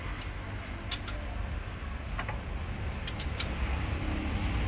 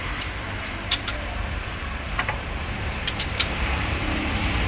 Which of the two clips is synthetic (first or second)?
second